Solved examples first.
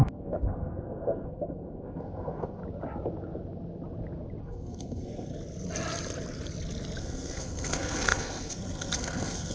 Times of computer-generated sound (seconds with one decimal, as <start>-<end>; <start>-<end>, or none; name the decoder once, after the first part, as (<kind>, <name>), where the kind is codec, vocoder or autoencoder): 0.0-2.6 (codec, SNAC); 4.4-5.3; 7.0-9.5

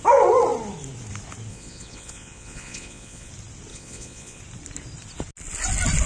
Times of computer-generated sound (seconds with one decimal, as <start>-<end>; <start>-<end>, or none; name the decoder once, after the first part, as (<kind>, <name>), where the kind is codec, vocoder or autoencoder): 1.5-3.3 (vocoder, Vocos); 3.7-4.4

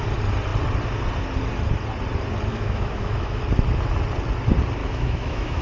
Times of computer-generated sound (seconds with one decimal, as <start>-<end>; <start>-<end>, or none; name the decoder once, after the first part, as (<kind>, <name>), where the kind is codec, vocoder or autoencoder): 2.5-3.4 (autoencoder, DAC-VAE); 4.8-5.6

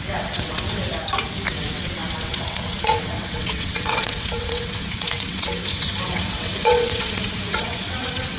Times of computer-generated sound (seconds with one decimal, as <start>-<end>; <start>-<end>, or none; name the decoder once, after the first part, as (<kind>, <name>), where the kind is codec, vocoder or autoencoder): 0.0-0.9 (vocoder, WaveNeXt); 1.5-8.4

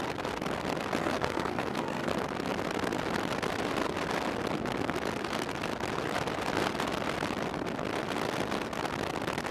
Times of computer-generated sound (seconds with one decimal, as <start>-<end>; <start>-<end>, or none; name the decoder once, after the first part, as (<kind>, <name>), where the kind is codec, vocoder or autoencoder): 1.0-2.1 (codec, SNAC)

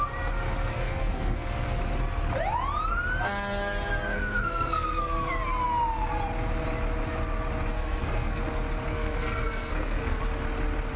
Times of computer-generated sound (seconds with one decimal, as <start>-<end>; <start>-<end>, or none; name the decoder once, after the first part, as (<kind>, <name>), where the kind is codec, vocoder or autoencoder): 0.7-1.8 (codec, SNAC); 4.1-5.3; 7.7-8.4; 8.9-10.2